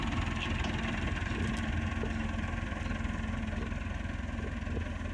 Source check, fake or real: real